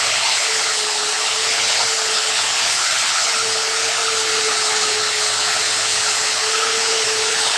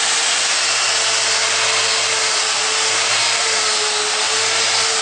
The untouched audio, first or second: second